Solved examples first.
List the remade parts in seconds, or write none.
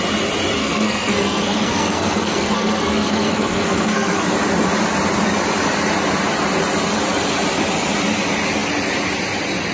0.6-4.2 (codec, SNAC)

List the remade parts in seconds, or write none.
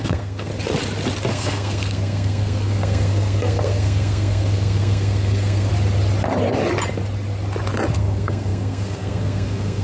0.0-0.5 (codec, SNAC); 1.3-5.7; 7.9-9.8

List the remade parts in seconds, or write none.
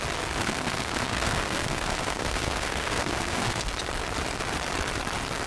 0.4-3.7 (codec, SNAC)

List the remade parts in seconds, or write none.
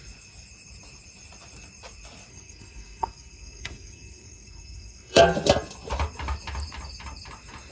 2.3-5.2 (codec, SNAC)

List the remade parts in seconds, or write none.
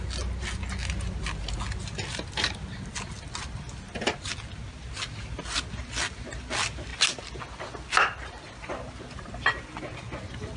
none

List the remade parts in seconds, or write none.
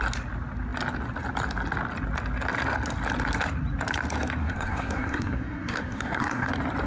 4.4-6.5 (codec, SNAC)